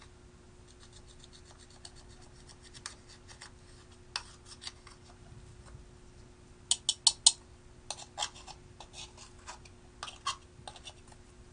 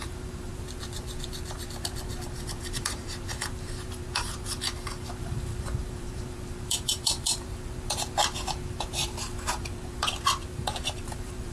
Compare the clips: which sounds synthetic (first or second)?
second